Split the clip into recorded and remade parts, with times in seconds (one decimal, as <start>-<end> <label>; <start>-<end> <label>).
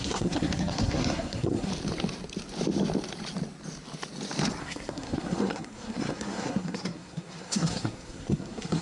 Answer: 0.0-1.7 remade; 1.7-4.6 recorded; 4.6-8.8 remade